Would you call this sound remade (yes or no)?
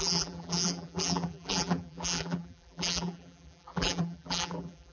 yes